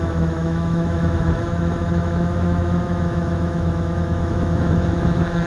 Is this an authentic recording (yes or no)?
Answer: no